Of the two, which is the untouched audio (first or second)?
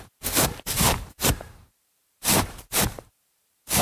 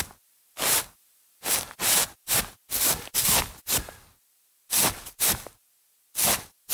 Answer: second